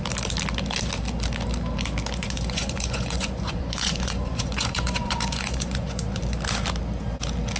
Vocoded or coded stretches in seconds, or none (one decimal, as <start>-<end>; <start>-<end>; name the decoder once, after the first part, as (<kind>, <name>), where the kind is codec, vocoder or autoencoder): 2.2-6.2 (vocoder, Vocos)